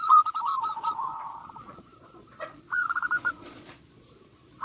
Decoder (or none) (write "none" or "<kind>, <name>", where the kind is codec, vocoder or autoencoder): vocoder, Vocos